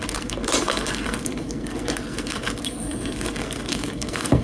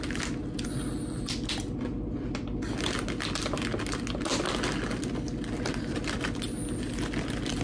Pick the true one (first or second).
second